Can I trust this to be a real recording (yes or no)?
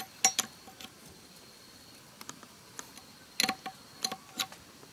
yes